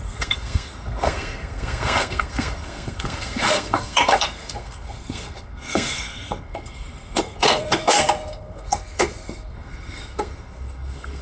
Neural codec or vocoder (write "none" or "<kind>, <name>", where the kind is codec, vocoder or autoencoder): codec, SNAC